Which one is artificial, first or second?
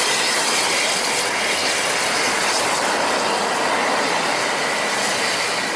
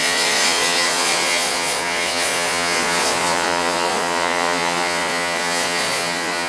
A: second